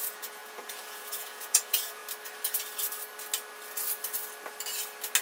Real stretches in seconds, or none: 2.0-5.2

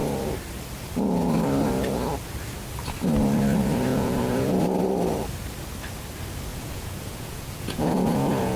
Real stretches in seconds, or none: 0.0-3.9; 4.6-6.5

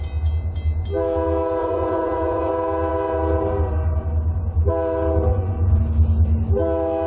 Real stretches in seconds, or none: 0.0-1.6; 2.5-5.3; 5.8-7.1

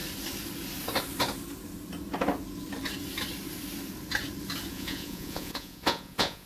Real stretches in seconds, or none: 0.0-4.7

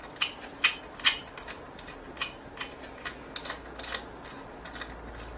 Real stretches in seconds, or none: 0.0-5.4

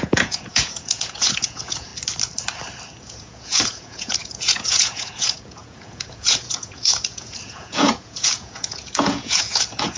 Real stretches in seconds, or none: 1.9-3.0